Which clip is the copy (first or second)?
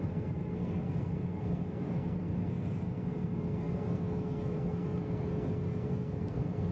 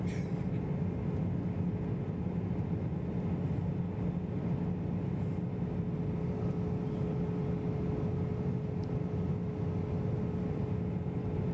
first